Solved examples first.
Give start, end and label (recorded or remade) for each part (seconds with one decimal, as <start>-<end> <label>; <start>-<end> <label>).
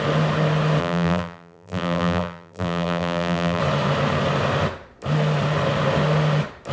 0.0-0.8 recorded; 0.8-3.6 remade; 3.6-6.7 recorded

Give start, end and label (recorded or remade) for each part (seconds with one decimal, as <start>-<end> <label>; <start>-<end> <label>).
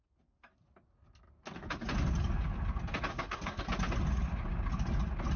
0.0-3.1 recorded; 3.1-3.6 remade; 3.6-5.4 recorded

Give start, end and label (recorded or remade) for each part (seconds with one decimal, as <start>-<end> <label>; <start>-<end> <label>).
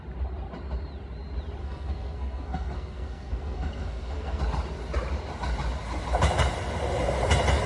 0.0-1.6 recorded; 1.6-4.4 remade; 4.4-7.7 recorded